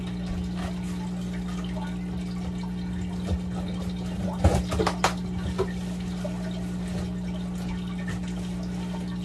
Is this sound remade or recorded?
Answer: recorded